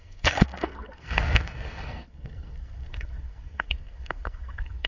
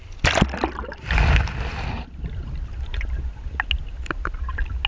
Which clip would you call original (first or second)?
second